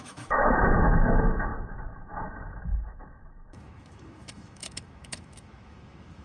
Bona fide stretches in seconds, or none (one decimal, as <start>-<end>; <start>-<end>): none